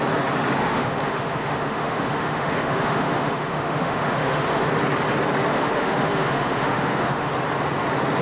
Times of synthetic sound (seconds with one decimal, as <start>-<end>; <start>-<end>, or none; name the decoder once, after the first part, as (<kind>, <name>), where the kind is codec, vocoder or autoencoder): 0.6-4.7 (autoencoder, DAC-VAE); 5.5-7.3